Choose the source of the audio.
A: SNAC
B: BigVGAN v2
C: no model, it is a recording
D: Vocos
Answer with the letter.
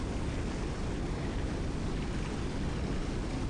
C